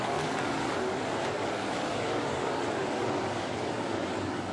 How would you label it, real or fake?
fake